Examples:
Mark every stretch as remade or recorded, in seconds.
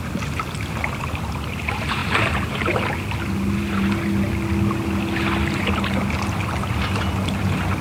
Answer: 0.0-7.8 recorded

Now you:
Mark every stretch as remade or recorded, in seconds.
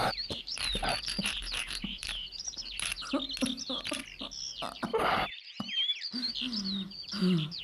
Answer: 0.0-2.9 remade; 2.9-7.6 recorded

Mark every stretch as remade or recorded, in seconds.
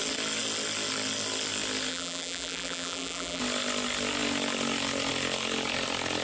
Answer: 0.0-1.9 recorded; 1.9-3.4 remade; 3.4-6.2 recorded